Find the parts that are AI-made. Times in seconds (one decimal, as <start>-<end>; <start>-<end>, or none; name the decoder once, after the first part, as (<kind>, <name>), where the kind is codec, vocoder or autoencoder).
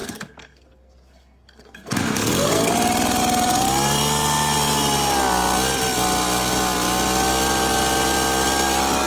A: 0.0-2.7 (codec, SNAC)